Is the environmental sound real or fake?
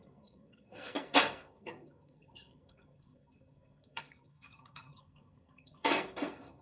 fake